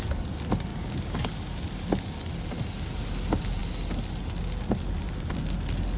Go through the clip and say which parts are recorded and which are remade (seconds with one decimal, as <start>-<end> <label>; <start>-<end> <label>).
0.0-0.7 recorded; 0.7-1.2 remade; 1.2-6.0 recorded